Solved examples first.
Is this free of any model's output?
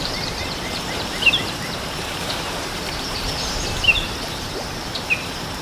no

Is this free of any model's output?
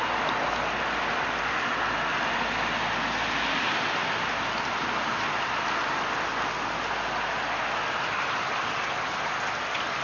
yes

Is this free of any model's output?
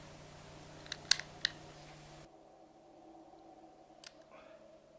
yes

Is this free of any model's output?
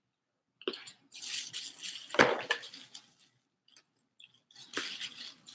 yes